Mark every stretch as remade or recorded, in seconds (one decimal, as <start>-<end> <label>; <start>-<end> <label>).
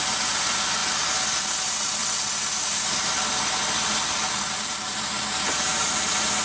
0.0-6.4 recorded